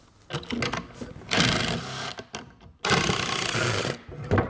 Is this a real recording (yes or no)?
yes